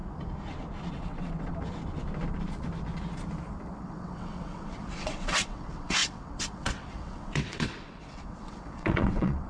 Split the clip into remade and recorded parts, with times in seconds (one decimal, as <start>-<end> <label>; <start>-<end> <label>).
0.0-0.9 recorded; 0.9-1.5 remade; 1.5-3.8 recorded; 3.8-9.5 remade